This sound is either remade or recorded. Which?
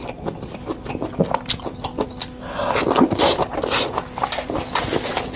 recorded